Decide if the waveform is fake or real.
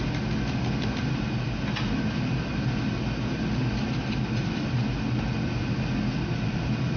real